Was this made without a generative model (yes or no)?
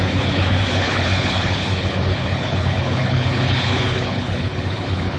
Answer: no